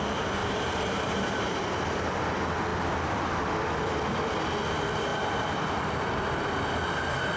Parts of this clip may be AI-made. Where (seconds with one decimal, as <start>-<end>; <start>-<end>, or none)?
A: 0.4-1.6; 5.1-5.8